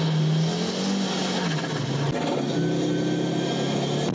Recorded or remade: recorded